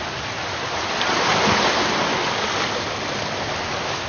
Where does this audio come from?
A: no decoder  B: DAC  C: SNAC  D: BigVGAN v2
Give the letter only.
A